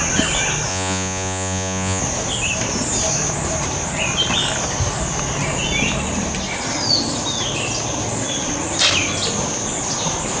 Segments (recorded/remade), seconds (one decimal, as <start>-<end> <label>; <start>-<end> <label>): 0.0-0.7 recorded; 0.7-2.0 remade; 2.0-10.4 recorded